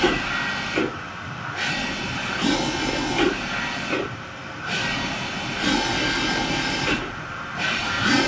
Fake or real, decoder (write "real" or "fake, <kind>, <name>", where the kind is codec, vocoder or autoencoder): real